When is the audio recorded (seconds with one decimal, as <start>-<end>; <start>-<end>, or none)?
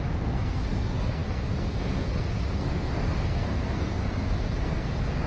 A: none